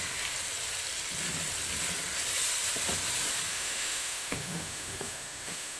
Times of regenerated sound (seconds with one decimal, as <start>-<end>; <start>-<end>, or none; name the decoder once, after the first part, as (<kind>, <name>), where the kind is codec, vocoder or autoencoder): 3.5-5.8 (autoencoder, DAC-VAE)